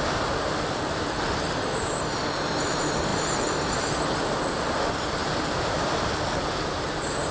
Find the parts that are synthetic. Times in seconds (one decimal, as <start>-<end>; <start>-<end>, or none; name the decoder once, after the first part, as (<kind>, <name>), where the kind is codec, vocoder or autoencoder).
0.0-7.3 (vocoder, BigVGAN v2)